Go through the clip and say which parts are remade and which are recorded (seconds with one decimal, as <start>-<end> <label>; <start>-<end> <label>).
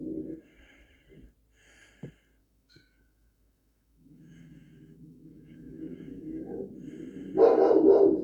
0.0-2.4 recorded; 2.4-6.7 remade; 6.7-8.2 recorded